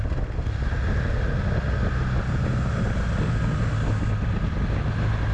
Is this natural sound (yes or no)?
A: yes